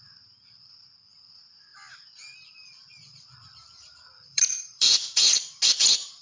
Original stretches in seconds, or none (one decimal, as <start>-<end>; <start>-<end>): 0.0-1.7; 5.4-6.2